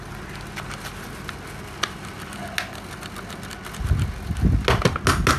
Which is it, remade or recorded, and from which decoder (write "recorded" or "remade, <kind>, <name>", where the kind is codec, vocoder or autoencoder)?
recorded